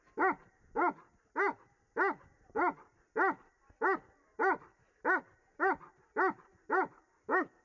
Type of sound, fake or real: real